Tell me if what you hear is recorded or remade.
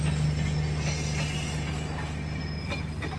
recorded